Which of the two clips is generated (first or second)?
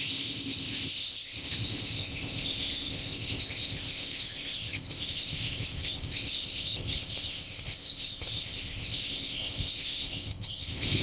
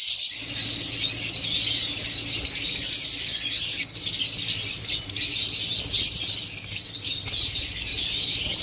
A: first